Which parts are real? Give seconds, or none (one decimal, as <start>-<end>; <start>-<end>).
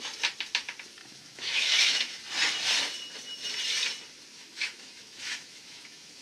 0.0-1.0; 2.2-4.3